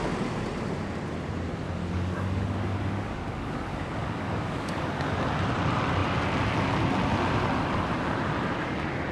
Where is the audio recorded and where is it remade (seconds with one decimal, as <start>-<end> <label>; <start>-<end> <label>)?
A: 0.0-1.8 recorded; 1.8-5.2 remade; 5.2-9.1 recorded